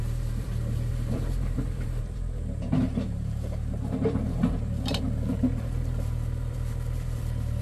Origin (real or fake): fake